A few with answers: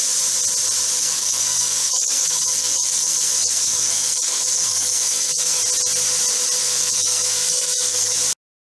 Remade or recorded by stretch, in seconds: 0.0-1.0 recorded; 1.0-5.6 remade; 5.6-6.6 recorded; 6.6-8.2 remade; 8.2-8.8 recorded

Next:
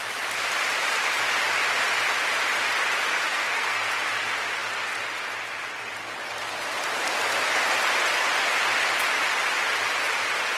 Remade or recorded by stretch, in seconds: 0.0-3.3 recorded; 3.3-3.9 remade; 3.9-10.6 recorded

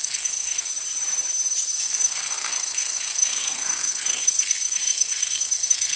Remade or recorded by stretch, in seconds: 0.0-0.7 remade; 0.7-1.8 recorded; 1.8-6.0 remade

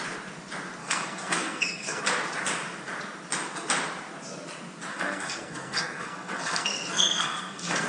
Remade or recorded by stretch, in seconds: 0.0-0.8 recorded; 0.8-2.0 remade; 2.0-4.9 recorded; 4.9-7.9 remade

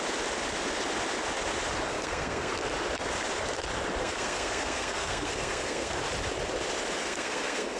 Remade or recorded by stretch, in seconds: 0.0-1.9 recorded; 1.9-2.5 remade; 2.5-4.0 recorded; 4.0-5.9 remade; 5.9-7.0 recorded; 7.0-7.8 remade